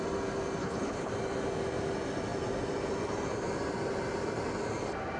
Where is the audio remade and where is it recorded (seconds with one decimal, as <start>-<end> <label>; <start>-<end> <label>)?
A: 0.0-0.6 recorded; 0.6-1.1 remade; 1.1-5.2 recorded